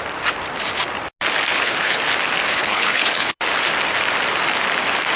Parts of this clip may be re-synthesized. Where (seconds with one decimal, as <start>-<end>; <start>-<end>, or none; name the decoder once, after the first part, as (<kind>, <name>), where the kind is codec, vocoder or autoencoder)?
1.5-2.0 (codec, HILCodec); 2.5-3.4